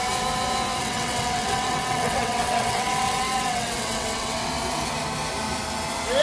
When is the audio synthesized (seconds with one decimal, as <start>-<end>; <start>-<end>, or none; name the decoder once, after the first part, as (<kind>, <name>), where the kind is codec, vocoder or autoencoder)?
0.8-4.5 (vocoder, WaveNeXt)